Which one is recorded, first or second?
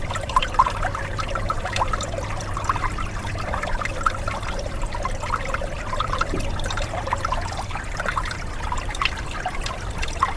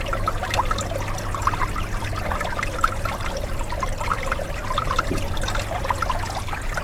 second